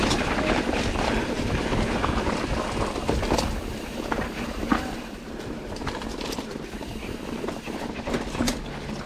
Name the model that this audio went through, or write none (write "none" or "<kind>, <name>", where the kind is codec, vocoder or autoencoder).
none